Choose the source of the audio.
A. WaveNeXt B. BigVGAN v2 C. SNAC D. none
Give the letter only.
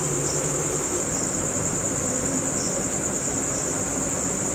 D